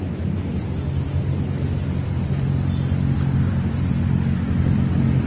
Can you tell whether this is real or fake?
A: real